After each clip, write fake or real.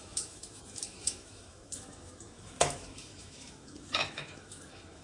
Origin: fake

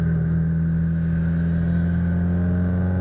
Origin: real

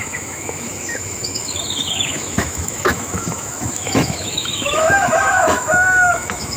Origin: fake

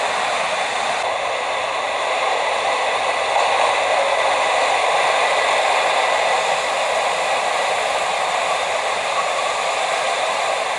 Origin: real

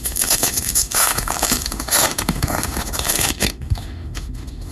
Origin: fake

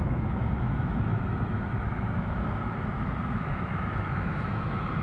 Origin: fake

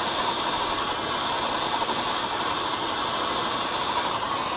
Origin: real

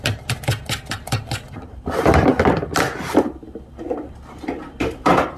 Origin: real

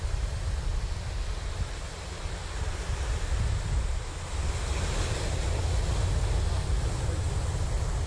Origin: real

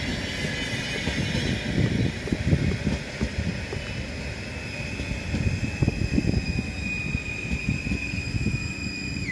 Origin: real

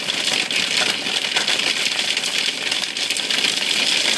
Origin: real